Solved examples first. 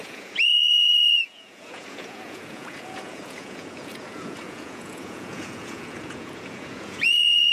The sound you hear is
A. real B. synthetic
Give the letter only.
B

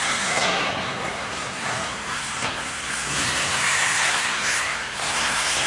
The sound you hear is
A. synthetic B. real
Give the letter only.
A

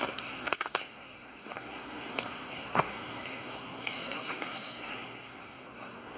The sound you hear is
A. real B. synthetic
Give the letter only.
B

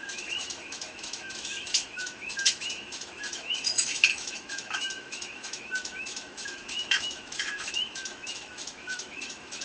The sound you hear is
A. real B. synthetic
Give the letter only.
B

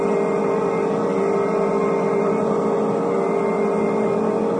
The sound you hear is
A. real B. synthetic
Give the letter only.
A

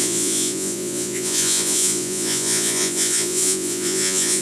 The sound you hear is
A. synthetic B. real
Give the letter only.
A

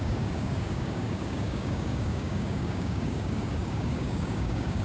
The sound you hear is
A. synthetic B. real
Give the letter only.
A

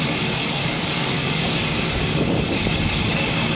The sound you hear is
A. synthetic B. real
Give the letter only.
A